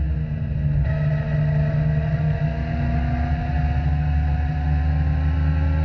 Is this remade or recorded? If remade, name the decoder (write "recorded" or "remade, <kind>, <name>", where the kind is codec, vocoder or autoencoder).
recorded